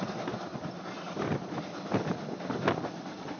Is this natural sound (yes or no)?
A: yes